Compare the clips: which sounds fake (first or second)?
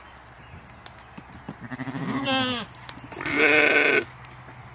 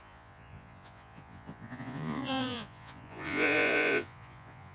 second